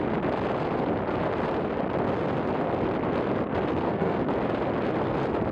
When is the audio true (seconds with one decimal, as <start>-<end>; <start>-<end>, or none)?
0.0-3.7; 4.3-5.5